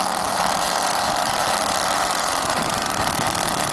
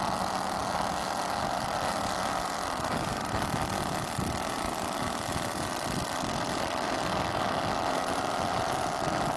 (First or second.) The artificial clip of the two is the first